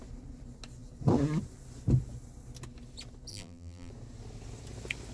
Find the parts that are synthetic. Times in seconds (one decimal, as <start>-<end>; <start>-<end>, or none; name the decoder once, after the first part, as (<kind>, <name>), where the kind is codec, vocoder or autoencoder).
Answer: 3.3-3.9 (vocoder, BigVGAN v2)